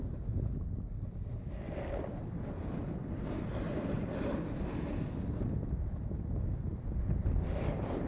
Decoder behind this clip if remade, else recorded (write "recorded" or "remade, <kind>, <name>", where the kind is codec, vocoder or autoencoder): recorded